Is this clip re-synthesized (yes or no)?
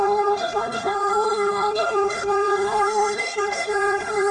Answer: yes